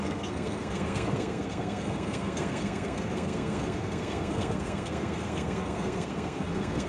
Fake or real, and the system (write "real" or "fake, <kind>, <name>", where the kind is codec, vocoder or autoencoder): fake, codec, SNAC